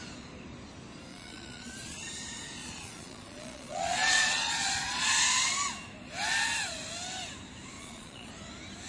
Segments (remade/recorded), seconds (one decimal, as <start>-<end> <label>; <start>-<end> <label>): 0.0-1.1 recorded; 1.1-2.0 remade; 2.0-2.6 recorded; 2.6-5.1 remade; 5.1-7.8 recorded; 7.8-8.3 remade; 8.3-8.9 recorded